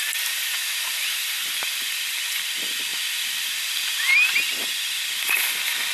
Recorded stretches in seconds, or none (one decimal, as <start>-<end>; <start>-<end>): 0.0-5.9